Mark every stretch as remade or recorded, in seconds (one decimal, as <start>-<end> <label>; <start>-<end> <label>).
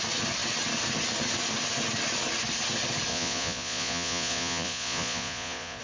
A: 0.0-3.1 recorded; 3.1-5.8 remade